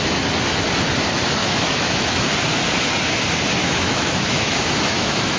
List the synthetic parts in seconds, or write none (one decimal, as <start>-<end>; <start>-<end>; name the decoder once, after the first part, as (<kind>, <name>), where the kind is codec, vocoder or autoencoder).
1.4-2.2 (autoencoder, DAC-VAE); 3.6-5.4